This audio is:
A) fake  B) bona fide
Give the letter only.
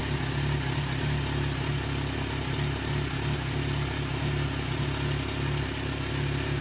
B